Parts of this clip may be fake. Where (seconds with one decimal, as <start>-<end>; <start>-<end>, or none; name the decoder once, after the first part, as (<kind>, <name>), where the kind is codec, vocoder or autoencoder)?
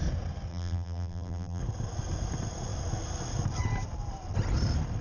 0.5-1.6 (vocoder, BigVGAN v2)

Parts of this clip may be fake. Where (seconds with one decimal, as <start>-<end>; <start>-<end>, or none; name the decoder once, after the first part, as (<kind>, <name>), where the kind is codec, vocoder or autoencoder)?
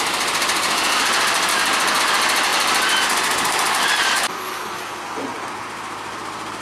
none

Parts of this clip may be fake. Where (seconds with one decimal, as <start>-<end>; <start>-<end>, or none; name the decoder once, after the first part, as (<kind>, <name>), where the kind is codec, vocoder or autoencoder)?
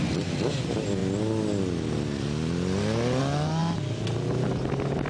none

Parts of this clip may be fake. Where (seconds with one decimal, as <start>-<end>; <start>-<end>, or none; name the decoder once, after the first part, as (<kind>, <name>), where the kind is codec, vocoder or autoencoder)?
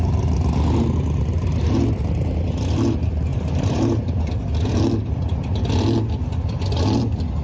3.3-4.3 (vocoder, BigVGAN v2)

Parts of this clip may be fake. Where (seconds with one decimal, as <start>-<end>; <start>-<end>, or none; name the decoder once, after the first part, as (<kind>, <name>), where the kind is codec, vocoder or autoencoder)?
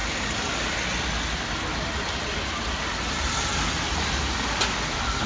2.9-3.6 (vocoder, BigVGAN v2)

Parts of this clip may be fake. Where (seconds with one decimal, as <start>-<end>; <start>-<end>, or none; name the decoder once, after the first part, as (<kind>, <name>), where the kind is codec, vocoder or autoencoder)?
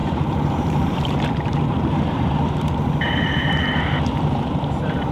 0.0-5.1 (vocoder, BigVGAN v2)